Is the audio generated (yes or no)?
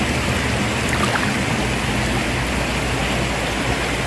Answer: no